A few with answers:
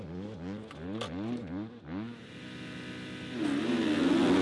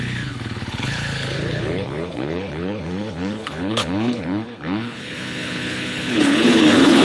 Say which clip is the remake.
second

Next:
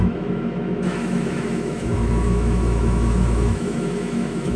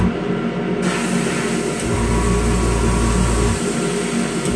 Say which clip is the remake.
first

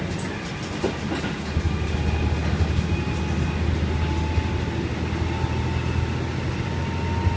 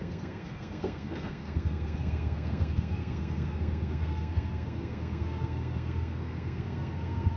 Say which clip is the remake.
second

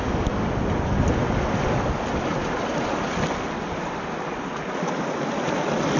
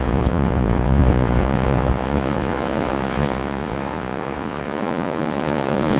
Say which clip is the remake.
second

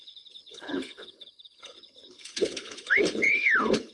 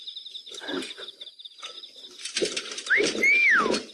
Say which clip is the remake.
first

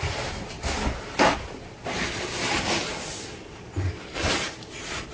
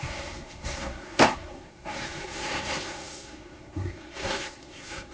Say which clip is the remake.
second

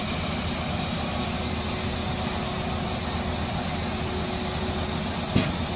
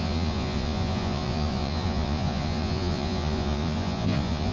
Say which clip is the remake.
second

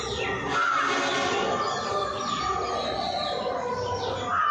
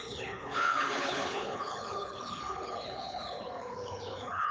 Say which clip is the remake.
second